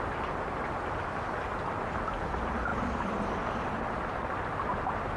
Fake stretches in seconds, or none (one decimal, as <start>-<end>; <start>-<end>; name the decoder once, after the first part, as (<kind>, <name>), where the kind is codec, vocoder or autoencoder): none